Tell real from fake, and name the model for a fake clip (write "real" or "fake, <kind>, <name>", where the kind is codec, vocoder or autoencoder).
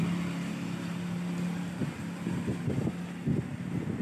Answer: real